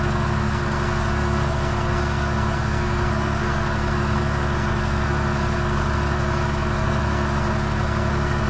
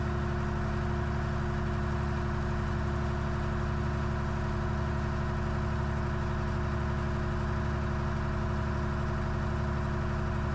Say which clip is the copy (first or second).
first